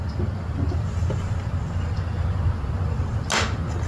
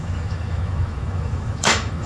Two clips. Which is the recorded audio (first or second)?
first